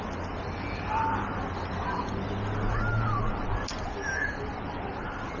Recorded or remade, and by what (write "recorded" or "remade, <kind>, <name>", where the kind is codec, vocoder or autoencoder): recorded